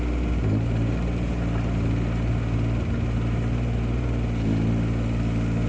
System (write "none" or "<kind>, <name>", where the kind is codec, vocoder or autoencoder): none